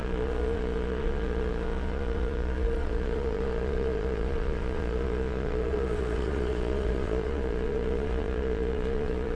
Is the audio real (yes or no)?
no